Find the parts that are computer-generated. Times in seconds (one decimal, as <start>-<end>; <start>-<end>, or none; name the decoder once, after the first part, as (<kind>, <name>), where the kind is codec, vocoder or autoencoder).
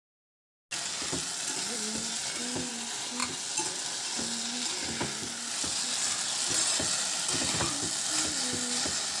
none